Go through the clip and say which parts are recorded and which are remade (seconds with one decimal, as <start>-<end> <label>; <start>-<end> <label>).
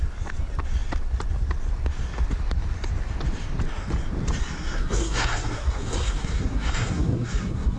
0.0-4.4 recorded; 4.4-7.8 remade